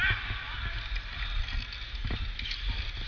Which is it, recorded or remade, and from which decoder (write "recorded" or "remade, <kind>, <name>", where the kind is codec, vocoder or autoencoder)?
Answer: recorded